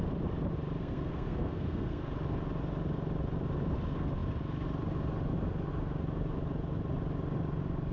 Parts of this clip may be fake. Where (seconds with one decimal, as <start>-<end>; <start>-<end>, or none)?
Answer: 0.8-2.0